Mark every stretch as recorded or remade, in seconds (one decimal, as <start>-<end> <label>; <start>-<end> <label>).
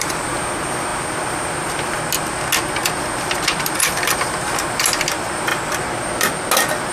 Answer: 0.0-6.9 recorded